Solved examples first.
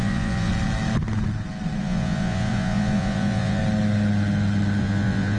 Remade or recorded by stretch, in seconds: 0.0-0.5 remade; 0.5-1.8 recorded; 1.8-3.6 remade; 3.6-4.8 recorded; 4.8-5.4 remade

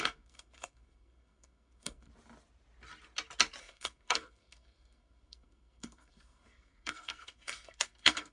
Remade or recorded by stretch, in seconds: 0.0-2.1 remade; 2.1-3.6 recorded; 3.6-8.3 remade

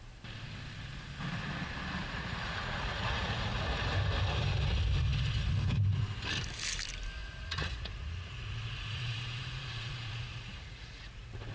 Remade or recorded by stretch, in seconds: 0.0-2.0 recorded; 2.0-3.6 remade; 3.6-7.2 recorded; 7.2-11.5 remade

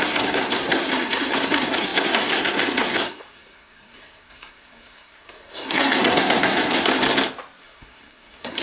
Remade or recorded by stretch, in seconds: 0.0-6.9 remade; 6.9-7.6 recorded; 7.6-8.6 remade

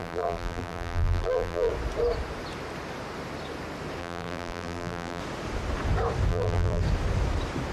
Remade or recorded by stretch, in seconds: 0.0-1.7 remade; 1.7-4.0 recorded; 4.0-5.2 remade; 5.2-6.3 recorded; 6.3-6.8 remade; 6.8-7.7 recorded